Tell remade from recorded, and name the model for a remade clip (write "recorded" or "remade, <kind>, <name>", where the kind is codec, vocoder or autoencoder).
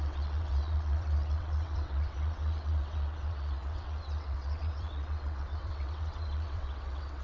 remade, vocoder, WaveNeXt